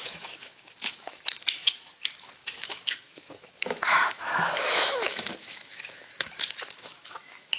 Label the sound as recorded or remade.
remade